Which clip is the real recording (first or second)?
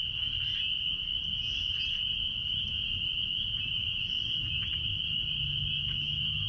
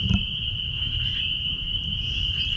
first